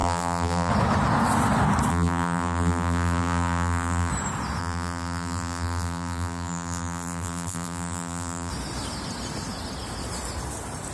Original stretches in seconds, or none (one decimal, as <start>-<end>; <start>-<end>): 0.7-1.9; 4.1-4.6; 8.5-10.9